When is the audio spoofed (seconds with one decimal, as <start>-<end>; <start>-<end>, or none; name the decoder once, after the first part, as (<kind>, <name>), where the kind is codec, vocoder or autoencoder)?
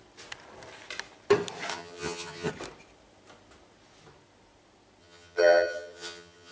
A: 1.7-2.5 (vocoder, HiFi-GAN); 5.0-6.5